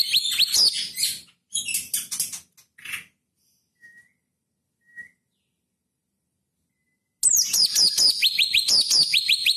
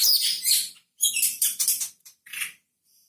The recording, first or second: first